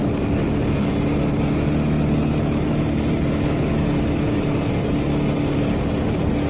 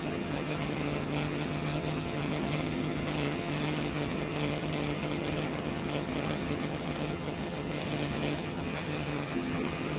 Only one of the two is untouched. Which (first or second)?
first